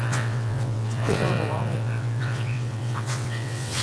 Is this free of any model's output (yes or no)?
no